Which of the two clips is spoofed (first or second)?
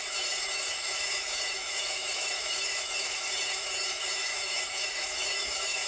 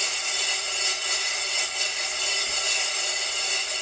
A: first